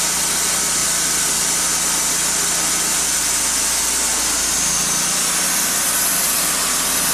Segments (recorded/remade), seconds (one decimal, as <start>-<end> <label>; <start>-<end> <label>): 0.0-7.1 recorded